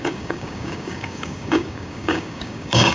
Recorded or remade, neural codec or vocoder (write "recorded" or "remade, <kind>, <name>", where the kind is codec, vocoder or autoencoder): remade, codec, DAC